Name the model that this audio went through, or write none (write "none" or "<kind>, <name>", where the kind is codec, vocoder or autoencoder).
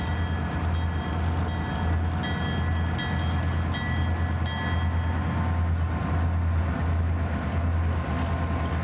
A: none